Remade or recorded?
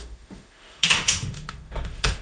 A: remade